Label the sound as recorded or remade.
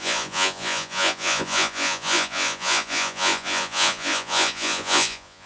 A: remade